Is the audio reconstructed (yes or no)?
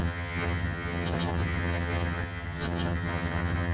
yes